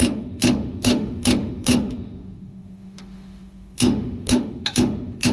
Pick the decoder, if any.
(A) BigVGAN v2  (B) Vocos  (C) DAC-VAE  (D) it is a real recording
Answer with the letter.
C